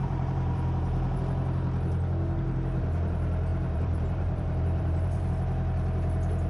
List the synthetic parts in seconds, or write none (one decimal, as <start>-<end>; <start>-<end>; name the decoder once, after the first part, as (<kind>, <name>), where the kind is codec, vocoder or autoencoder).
0.0-1.2 (vocoder, BigVGAN v2); 3.5-5.3